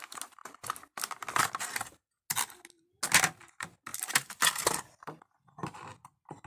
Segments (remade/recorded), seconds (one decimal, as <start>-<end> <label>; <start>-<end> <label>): 0.0-0.4 recorded; 0.4-1.5 remade; 1.5-6.5 recorded